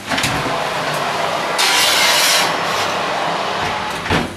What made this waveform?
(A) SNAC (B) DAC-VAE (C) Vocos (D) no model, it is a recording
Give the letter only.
D